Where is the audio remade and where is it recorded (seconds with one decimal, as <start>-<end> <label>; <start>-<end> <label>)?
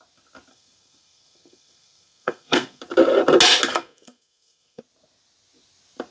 0.0-0.5 recorded; 0.5-2.8 remade; 2.8-3.7 recorded; 3.7-4.8 remade; 4.8-6.1 recorded